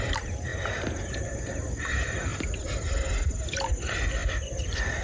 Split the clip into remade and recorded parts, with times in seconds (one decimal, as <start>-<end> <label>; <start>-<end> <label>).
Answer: 0.0-0.5 recorded; 0.5-1.9 remade; 1.9-4.2 recorded; 4.2-5.0 remade